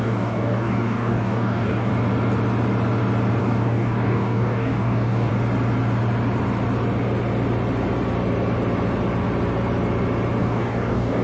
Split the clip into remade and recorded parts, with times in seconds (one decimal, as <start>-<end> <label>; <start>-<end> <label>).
0.0-1.9 remade; 1.9-3.4 recorded; 3.4-5.3 remade; 5.3-10.4 recorded; 10.4-11.2 remade